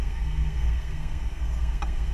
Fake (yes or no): yes